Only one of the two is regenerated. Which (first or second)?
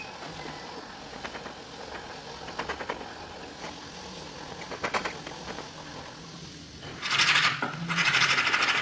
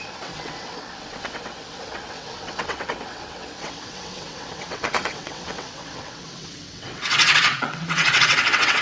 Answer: second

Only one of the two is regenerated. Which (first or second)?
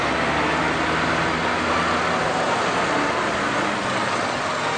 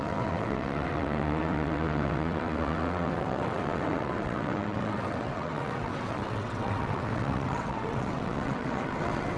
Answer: second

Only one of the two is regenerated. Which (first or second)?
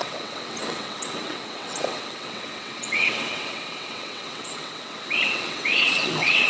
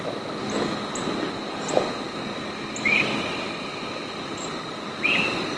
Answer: first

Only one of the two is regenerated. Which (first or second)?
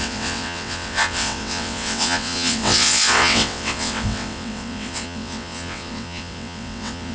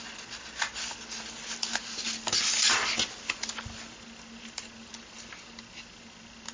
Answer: first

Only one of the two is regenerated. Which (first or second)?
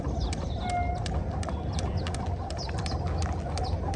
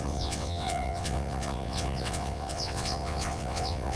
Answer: second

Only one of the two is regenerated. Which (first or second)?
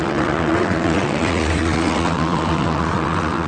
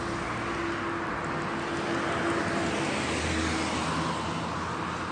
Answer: first